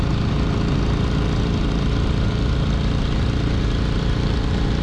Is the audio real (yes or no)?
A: yes